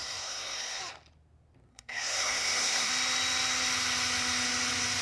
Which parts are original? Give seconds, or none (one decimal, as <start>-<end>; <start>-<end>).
0.8-1.7; 2.9-5.0